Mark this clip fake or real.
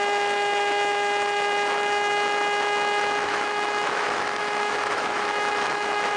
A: fake